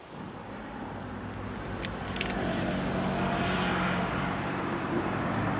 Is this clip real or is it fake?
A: real